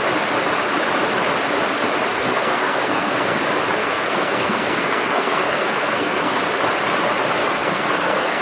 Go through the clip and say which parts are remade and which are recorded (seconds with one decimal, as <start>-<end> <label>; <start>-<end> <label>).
0.0-2.1 recorded; 2.1-3.4 remade; 3.4-3.8 recorded; 3.8-6.4 remade; 6.4-7.4 recorded; 7.4-8.4 remade